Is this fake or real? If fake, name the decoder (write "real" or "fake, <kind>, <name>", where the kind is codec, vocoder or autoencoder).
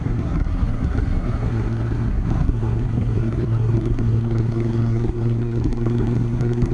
fake, codec, SNAC